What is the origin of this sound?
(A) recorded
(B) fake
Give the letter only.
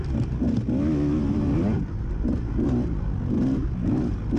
A